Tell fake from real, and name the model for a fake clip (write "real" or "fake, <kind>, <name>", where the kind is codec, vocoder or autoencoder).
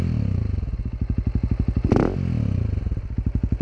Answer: real